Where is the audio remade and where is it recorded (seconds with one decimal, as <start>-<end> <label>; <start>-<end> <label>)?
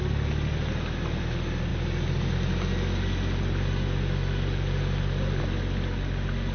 0.0-6.5 recorded